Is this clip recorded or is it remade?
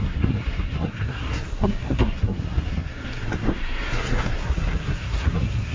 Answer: remade